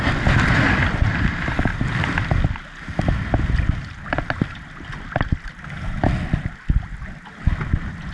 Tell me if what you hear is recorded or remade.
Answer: recorded